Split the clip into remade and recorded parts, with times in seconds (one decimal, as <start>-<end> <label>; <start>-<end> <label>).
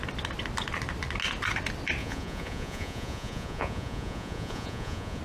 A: 0.0-2.0 recorded; 2.0-5.2 remade